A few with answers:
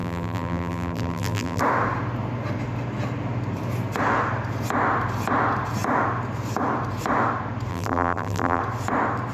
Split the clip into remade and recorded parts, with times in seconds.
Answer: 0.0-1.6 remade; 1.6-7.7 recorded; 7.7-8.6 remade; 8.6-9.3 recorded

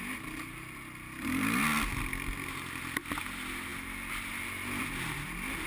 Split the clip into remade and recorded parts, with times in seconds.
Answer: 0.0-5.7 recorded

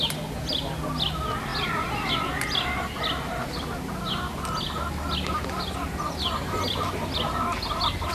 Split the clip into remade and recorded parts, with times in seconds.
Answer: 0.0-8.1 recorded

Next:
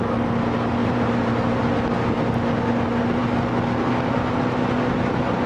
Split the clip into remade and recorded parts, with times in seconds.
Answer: 0.0-0.8 recorded; 0.8-1.3 remade; 1.3-5.5 recorded